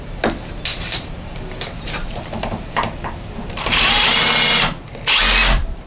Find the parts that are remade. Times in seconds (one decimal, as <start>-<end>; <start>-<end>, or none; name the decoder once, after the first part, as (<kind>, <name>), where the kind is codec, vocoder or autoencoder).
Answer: 0.7-4.2 (vocoder, BigVGAN v2)